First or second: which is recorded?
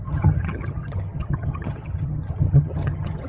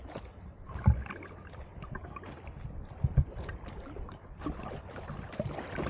second